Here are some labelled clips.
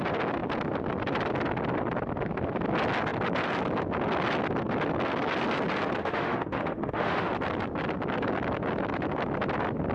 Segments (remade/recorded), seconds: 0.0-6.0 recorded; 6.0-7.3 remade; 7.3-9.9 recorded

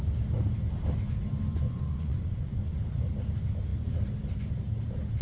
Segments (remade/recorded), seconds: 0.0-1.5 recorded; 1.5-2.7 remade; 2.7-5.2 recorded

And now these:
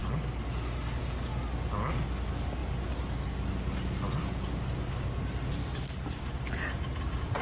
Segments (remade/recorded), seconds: 0.0-7.4 recorded